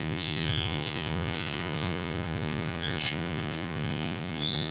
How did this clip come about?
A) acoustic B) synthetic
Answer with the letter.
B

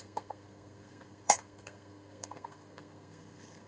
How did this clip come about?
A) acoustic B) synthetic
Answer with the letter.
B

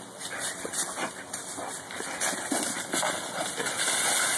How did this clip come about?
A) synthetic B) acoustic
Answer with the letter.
B